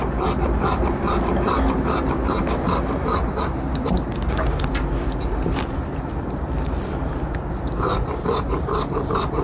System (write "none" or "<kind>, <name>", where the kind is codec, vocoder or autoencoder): vocoder, BigVGAN v2